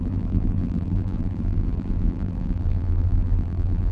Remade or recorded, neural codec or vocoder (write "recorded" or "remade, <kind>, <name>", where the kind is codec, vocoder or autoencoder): remade, vocoder, BigVGAN v2